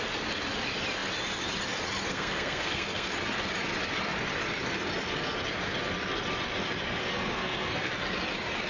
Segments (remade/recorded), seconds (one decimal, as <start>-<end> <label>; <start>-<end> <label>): 0.0-2.1 recorded; 2.1-3.1 remade; 3.1-7.0 recorded; 7.0-7.9 remade; 7.9-8.7 recorded